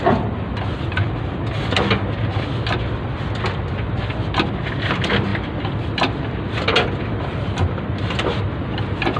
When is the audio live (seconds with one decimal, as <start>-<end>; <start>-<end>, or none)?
0.0-9.2